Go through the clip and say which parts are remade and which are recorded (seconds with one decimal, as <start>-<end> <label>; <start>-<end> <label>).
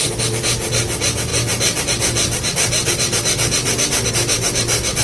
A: 0.0-5.0 recorded